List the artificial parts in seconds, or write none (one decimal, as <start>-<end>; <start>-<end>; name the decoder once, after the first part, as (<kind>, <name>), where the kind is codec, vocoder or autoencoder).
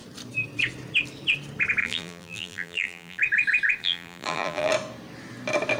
1.8-3.2 (vocoder, BigVGAN v2); 3.8-4.7